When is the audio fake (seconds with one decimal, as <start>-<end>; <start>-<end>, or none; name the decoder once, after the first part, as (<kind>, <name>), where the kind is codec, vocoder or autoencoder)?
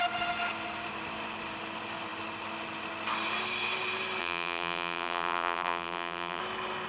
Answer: 4.2-6.4 (vocoder, BigVGAN v2)